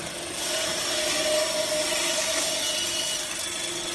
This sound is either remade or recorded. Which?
recorded